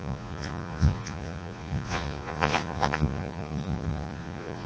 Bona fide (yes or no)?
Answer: no